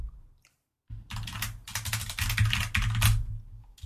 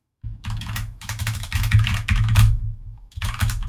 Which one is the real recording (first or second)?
first